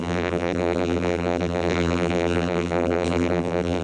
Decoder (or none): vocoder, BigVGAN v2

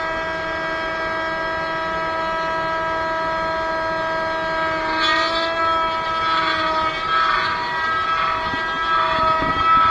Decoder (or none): none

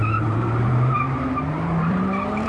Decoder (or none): vocoder, BigVGAN v2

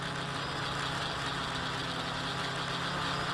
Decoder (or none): none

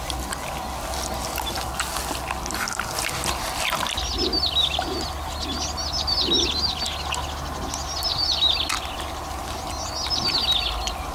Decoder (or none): none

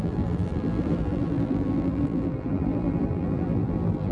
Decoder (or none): vocoder, BigVGAN v2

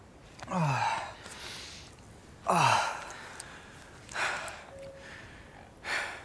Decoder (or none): none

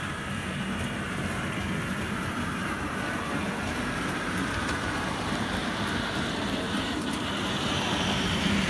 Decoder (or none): vocoder, BigVGAN v2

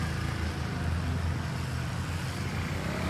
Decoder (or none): none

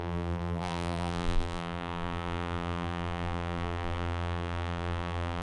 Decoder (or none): vocoder, BigVGAN v2